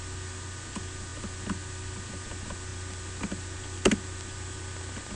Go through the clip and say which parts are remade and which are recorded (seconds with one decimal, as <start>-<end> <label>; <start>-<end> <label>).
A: 0.0-5.2 recorded